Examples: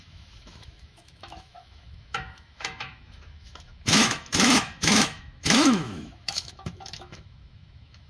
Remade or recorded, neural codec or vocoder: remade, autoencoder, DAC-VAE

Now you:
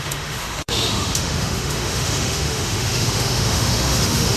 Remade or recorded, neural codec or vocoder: remade, autoencoder, DAC-VAE